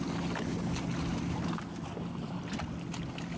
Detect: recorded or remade recorded